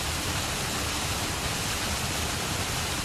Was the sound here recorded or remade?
recorded